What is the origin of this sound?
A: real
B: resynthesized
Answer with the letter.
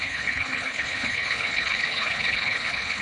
B